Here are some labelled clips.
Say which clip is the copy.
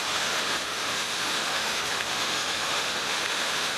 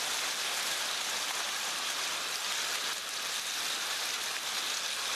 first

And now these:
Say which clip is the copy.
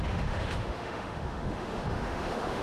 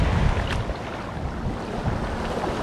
first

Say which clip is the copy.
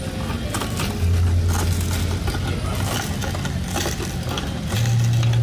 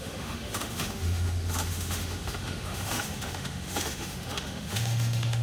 second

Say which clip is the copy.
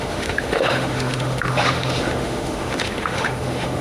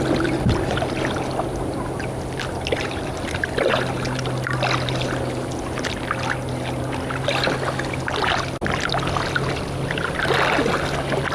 first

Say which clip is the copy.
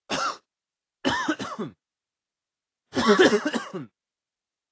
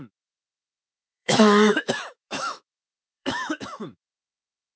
second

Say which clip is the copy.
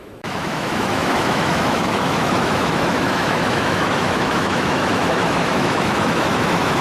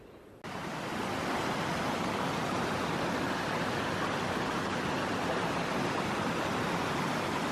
first